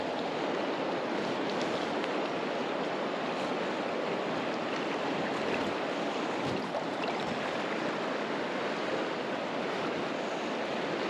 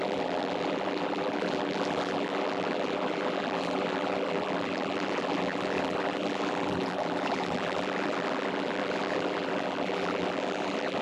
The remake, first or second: second